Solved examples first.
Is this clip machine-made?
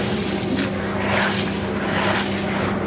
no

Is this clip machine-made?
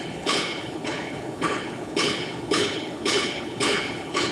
yes